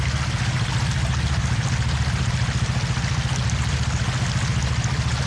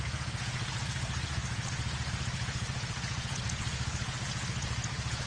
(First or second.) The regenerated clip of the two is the second